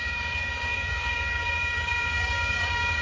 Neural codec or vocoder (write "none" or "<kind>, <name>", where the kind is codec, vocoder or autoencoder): codec, DAC